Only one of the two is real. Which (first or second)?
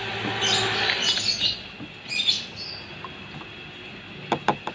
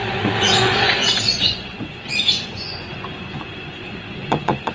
first